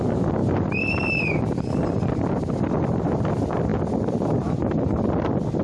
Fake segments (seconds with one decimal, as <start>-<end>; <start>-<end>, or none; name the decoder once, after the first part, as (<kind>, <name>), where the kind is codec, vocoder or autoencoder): 0.4-2.3 (vocoder, BigVGAN v2)